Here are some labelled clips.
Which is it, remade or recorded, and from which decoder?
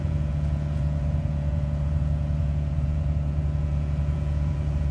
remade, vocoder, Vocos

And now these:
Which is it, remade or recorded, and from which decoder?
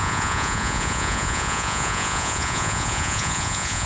remade, vocoder, Vocos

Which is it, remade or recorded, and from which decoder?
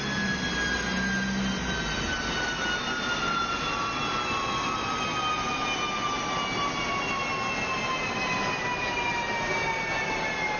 recorded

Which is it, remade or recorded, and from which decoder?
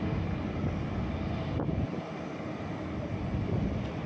recorded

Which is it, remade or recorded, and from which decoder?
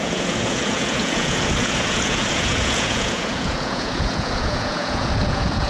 remade, vocoder, Vocos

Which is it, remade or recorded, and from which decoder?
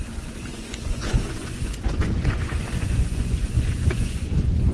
remade, vocoder, Vocos